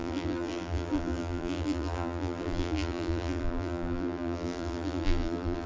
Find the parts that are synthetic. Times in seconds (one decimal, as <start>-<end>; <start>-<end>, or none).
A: 0.0-5.7